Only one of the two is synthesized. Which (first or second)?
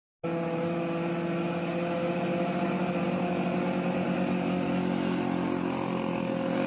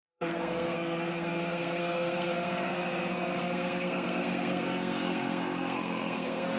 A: second